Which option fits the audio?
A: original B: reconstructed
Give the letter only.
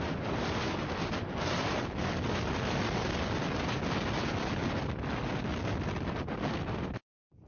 A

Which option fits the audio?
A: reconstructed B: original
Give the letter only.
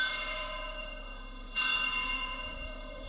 A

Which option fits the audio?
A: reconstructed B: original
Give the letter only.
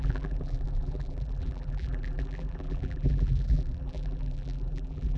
A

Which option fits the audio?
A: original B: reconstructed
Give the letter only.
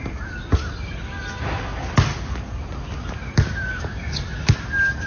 A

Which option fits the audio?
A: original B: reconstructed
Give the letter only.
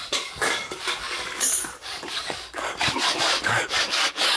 B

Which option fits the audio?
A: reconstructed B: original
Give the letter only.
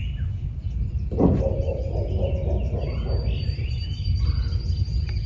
B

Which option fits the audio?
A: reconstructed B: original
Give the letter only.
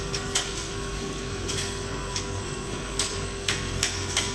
A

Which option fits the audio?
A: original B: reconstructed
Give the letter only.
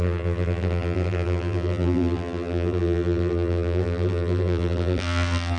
B